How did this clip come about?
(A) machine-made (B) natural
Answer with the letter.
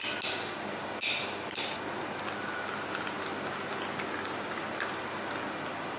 B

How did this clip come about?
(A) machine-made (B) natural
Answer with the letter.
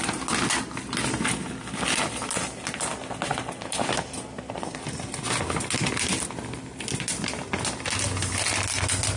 B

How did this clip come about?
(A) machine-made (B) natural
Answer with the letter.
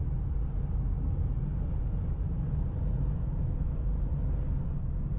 B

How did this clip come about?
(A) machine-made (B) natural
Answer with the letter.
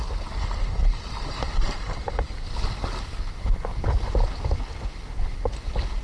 B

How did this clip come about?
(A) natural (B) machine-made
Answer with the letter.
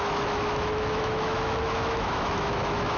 B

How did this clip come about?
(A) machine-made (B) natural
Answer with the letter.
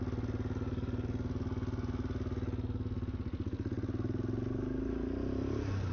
B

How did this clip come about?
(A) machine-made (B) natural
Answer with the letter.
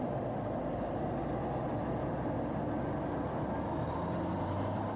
B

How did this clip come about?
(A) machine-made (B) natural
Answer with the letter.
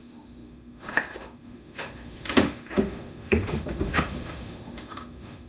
A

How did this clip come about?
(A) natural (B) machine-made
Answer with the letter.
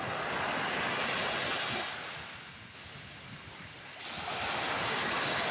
A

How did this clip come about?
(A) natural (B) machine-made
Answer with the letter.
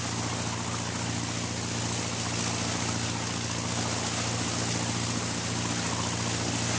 A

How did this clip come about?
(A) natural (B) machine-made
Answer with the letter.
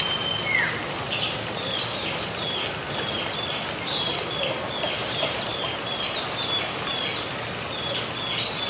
A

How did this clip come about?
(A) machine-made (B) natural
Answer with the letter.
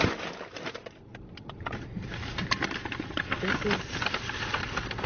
B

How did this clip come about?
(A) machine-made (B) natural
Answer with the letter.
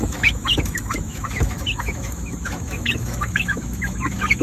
A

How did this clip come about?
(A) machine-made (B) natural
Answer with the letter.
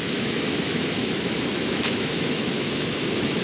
A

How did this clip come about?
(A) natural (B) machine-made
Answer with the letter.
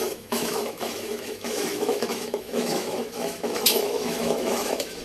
B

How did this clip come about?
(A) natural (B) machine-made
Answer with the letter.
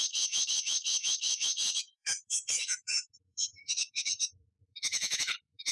B